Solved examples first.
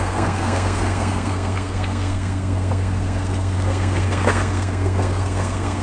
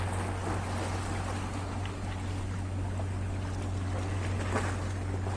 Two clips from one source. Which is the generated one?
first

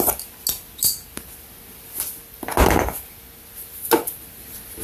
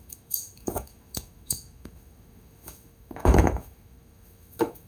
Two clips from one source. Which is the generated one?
second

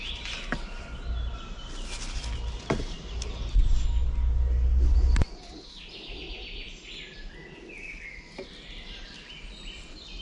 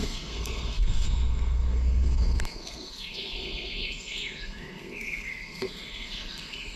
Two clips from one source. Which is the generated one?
second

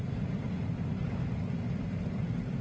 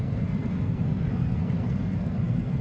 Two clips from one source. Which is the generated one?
second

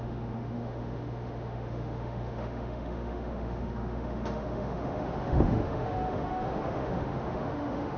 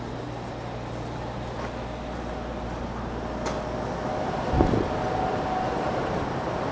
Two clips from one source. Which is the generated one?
first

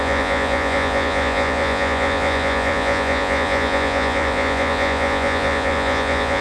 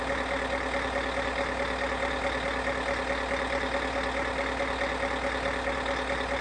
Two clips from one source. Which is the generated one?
first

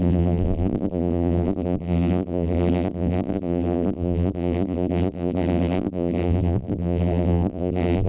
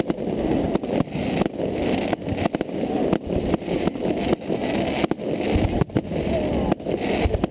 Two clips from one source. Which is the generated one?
first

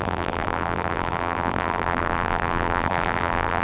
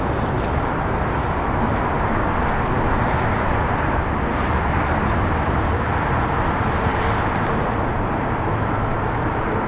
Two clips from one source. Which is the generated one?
first